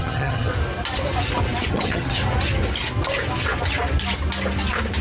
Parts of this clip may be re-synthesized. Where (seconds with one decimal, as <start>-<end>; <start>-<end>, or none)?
0.0-0.5; 1.7-2.2